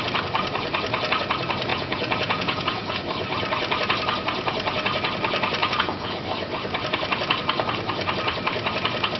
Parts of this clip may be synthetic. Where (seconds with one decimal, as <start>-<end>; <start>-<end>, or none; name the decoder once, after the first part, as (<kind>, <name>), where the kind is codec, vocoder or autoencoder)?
1.7-3.0 (vocoder, Vocos); 5.6-6.2